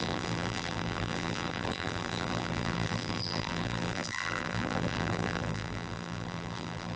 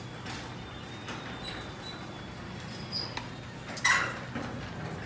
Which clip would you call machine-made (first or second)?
first